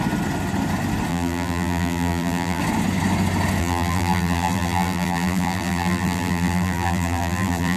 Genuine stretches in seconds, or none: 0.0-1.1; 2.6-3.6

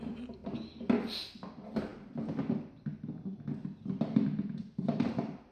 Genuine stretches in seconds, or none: 0.4-1.5; 1.9-4.6

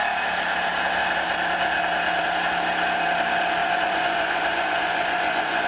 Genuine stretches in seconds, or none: 0.0-3.6

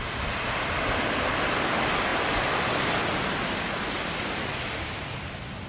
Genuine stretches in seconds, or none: 0.0-5.7